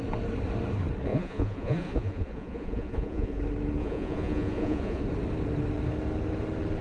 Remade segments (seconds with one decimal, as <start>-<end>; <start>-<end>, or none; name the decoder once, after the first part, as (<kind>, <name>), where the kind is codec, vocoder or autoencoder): 1.1-3.4 (vocoder, Vocos); 3.8-5.0